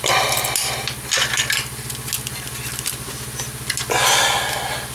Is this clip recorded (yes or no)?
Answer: yes